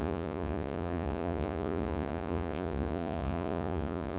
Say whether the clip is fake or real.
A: fake